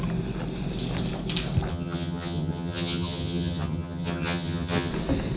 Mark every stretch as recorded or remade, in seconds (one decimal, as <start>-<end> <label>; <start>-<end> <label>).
0.0-1.7 recorded; 1.7-4.9 remade; 4.9-5.4 recorded